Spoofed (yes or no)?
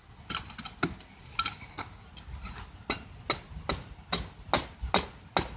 no